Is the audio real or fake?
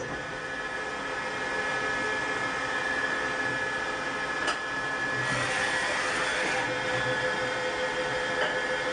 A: real